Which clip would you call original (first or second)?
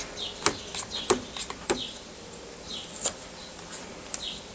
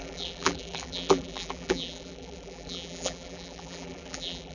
first